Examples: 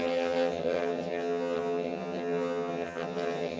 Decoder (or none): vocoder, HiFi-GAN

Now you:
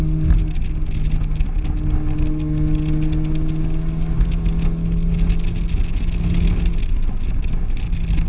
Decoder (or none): none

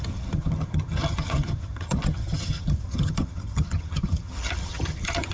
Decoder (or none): vocoder, HiFi-GAN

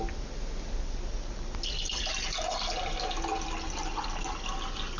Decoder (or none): none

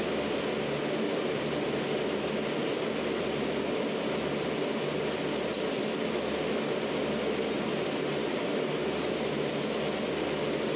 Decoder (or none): none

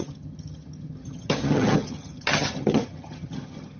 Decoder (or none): vocoder, HiFi-GAN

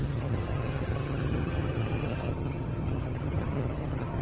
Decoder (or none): vocoder, HiFi-GAN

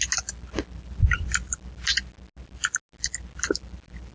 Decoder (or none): none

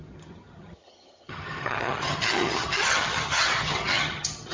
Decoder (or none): vocoder, HiFi-GAN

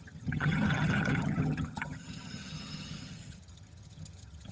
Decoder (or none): vocoder, HiFi-GAN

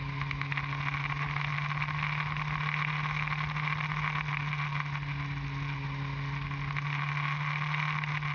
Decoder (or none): none